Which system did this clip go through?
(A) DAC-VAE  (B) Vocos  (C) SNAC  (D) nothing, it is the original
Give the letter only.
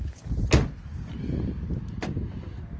D